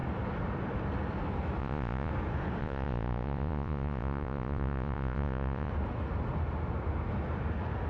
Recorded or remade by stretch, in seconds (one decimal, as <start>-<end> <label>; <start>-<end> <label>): 0.0-1.6 recorded; 1.6-2.1 remade; 2.1-2.6 recorded; 2.6-5.7 remade; 5.7-7.9 recorded